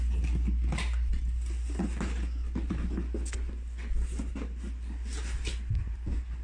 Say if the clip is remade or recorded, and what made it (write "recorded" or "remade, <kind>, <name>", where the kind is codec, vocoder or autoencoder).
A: recorded